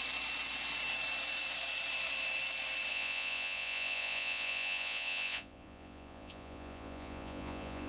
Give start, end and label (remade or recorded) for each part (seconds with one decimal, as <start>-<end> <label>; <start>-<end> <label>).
0.0-2.9 recorded; 2.9-7.9 remade